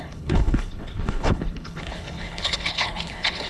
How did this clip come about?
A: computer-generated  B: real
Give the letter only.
A